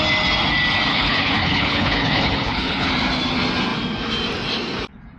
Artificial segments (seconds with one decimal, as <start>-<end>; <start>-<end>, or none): 0.9-2.9